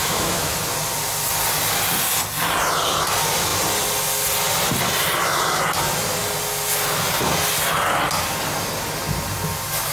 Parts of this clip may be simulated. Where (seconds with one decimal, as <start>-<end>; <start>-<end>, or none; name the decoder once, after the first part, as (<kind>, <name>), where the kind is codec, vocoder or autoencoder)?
0.0-0.5 (autoencoder, DAC-VAE)